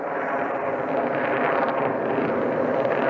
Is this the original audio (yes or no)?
no